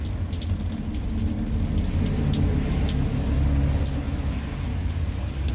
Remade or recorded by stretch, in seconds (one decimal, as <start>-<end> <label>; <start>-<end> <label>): 0.0-4.7 recorded; 4.7-5.5 remade